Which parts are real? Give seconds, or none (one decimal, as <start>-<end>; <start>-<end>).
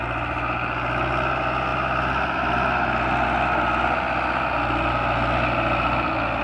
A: 0.0-6.4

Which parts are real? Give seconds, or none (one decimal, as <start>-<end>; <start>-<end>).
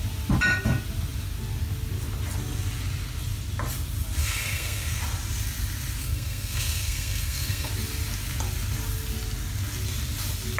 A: 0.0-4.2; 5.0-6.0; 7.7-10.6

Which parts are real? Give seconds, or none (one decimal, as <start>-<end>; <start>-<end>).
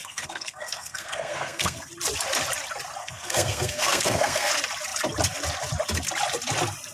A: 1.9-3.0; 4.5-6.9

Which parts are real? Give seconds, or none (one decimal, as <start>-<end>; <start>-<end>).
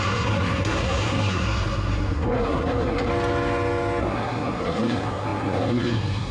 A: 3.1-4.0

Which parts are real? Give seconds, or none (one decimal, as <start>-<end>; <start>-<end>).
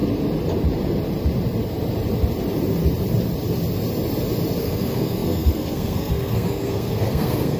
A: 0.0-4.6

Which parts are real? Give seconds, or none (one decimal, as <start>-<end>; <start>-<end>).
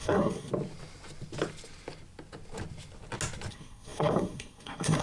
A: 0.5-3.5